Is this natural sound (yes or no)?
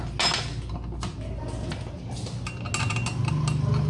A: yes